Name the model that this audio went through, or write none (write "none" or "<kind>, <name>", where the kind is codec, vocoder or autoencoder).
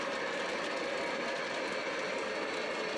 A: none